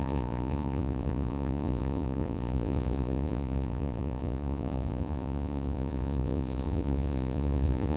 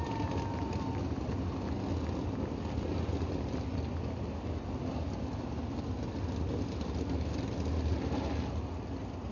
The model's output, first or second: first